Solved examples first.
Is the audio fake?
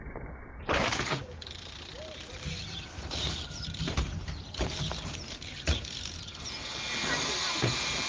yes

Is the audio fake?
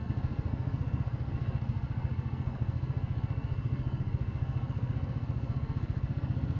yes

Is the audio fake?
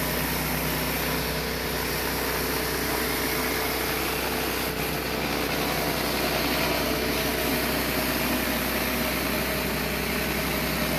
no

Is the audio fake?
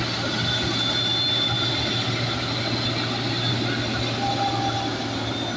no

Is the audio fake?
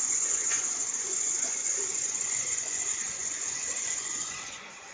yes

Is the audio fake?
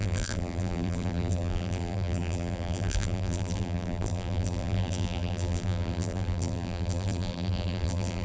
yes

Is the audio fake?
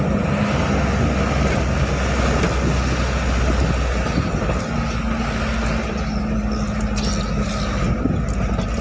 no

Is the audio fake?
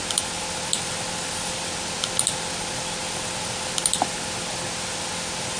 no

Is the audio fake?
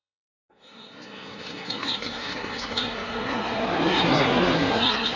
yes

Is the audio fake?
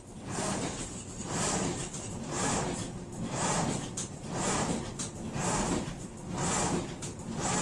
no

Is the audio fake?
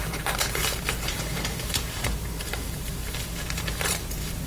yes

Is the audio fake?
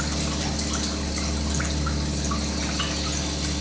no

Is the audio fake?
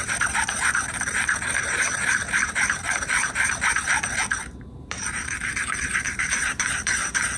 yes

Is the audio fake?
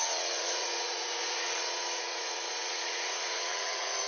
yes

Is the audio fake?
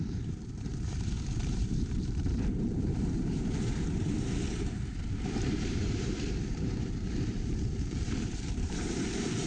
yes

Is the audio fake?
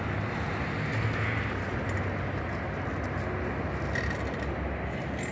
no